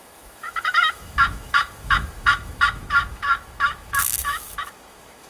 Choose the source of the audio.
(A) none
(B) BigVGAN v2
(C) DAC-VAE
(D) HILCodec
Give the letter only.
C